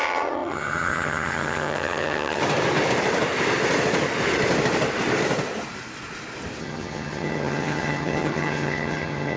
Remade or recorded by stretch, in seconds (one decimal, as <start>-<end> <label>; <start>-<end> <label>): 0.0-2.4 remade; 2.4-6.6 recorded; 6.6-9.4 remade